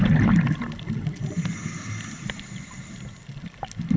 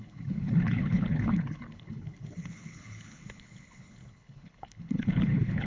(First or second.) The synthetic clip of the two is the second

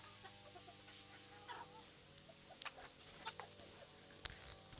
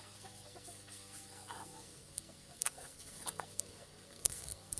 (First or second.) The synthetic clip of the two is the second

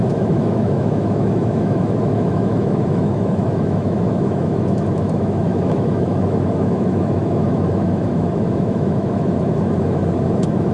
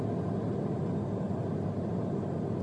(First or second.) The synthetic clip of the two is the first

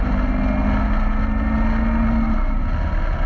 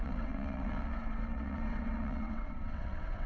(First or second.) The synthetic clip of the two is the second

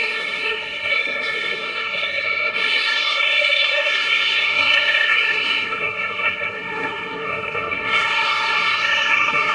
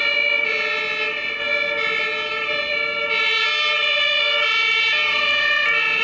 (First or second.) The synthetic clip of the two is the first